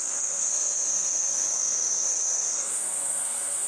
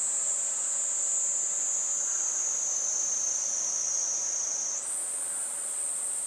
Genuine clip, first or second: second